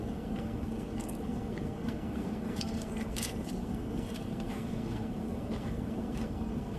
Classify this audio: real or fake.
fake